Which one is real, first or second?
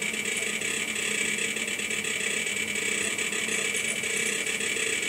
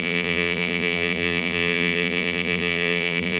first